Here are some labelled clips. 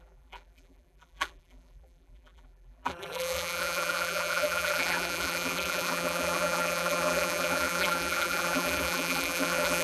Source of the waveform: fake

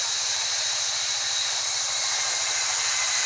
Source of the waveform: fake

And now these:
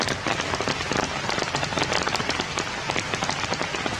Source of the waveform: real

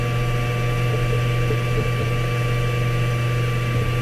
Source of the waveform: real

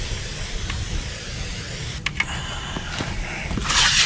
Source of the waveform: real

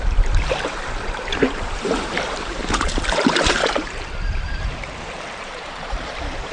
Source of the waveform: fake